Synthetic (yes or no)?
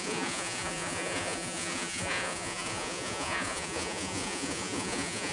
yes